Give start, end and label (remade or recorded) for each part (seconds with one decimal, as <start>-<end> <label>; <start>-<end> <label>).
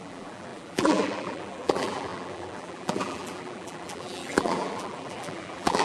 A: 0.0-5.8 remade